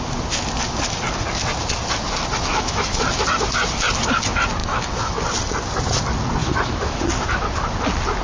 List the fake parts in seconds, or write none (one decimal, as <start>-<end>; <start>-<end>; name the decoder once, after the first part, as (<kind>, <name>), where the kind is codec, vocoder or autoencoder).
2.5-3.0 (autoencoder, DAC-VAE); 4.6-5.2; 6.4-7.0